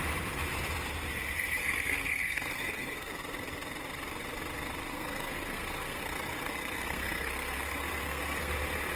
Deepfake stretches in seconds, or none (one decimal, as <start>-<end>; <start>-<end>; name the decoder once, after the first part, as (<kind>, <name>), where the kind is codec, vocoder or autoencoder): 1.6-3.1 (codec, SNAC); 4.9-8.5